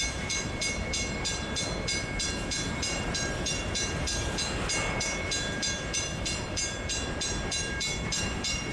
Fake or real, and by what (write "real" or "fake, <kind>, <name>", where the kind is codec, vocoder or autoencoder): fake, vocoder, BigVGAN v2